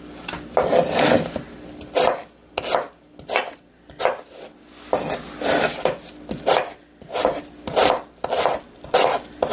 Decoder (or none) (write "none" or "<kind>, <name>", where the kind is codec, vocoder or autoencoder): none